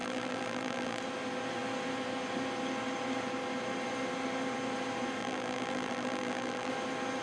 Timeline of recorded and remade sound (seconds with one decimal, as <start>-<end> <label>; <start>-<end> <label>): 0.0-1.0 remade; 1.0-5.2 recorded; 5.2-6.7 remade; 6.7-7.2 recorded